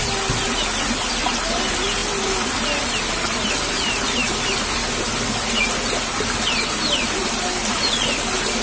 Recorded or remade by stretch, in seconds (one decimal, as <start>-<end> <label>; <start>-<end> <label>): 0.0-8.6 recorded